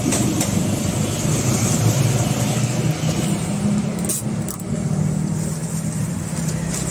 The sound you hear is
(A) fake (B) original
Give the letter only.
B